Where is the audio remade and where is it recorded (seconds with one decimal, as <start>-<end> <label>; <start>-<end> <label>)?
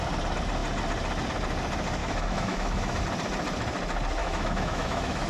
0.0-2.0 recorded; 2.0-3.0 remade; 3.0-4.2 recorded; 4.2-5.3 remade